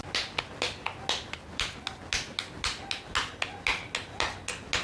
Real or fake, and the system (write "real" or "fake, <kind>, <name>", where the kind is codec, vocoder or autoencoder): real